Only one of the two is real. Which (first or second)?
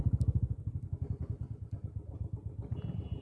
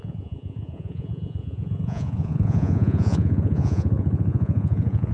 first